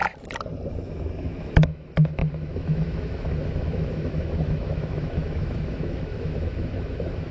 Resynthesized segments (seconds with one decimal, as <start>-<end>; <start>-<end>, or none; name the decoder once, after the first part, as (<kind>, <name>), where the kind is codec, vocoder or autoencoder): 0.7-7.3 (autoencoder, DAC-VAE)